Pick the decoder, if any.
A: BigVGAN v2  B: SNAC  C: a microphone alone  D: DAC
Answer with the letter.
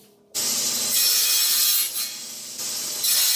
C